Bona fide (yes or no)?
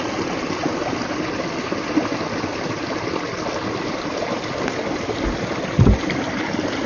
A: yes